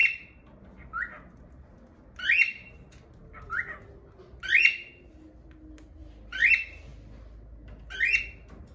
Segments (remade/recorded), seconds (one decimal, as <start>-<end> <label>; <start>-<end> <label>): 0.0-0.6 remade; 0.6-8.7 recorded